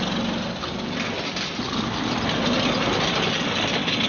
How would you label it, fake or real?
real